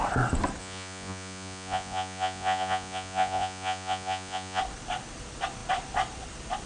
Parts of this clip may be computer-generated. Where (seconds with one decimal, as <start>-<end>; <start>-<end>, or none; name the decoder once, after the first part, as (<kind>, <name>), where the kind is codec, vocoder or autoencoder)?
0.6-4.6 (vocoder, Vocos)